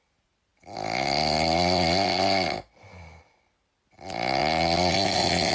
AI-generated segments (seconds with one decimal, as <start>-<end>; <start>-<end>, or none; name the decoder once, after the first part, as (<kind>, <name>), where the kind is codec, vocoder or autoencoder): none